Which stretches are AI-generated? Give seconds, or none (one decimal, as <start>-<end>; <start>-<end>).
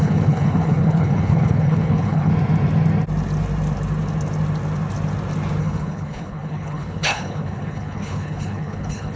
0.0-2.3; 5.6-9.2